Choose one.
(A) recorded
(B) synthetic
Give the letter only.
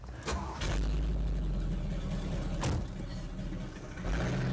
A